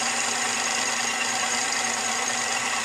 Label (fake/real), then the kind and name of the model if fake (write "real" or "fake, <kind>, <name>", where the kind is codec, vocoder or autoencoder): fake, vocoder, BigVGAN v2